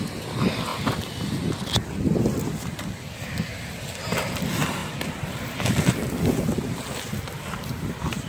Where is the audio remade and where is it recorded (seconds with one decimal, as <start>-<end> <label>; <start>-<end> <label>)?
0.0-8.3 recorded